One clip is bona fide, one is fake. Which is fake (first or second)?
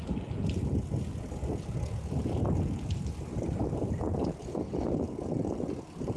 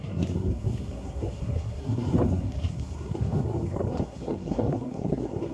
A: second